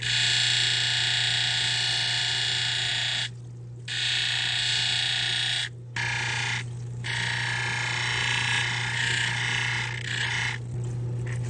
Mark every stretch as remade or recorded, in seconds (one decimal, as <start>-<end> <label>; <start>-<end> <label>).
0.0-11.5 recorded